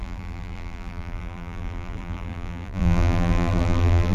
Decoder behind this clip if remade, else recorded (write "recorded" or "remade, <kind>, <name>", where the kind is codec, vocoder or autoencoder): remade, vocoder, BigVGAN v2